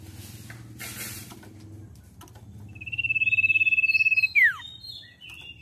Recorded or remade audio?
recorded